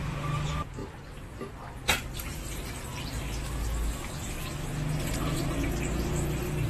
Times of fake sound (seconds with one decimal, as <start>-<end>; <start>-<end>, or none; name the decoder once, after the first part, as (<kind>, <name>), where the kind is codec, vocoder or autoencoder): none